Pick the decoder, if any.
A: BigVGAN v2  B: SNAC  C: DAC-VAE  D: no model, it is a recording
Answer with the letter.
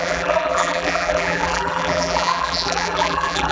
A